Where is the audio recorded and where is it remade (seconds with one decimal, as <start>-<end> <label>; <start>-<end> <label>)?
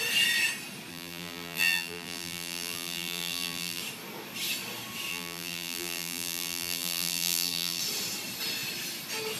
0.0-0.9 recorded; 0.9-3.8 remade; 3.8-5.1 recorded; 5.1-7.8 remade; 7.8-9.4 recorded